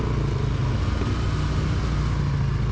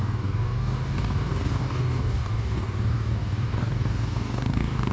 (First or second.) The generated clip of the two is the second